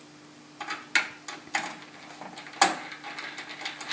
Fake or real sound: real